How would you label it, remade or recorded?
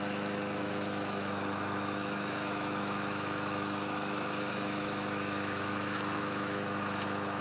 remade